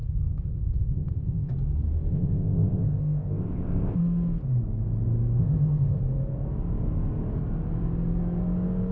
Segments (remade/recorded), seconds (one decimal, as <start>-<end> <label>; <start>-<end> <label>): 0.0-1.5 remade; 1.5-2.1 recorded; 2.1-4.0 remade; 4.0-5.4 recorded; 5.4-6.0 remade; 6.0-8.9 recorded